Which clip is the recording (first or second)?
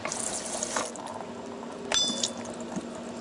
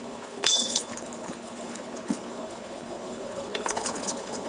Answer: first